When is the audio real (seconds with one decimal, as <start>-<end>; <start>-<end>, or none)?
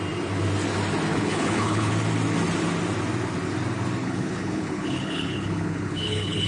0.0-1.1; 1.9-4.0